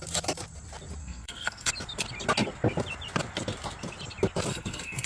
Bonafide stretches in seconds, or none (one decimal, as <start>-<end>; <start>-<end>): 0.0-1.0; 1.7-4.5